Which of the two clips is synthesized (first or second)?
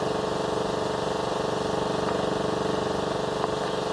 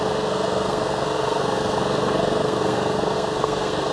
second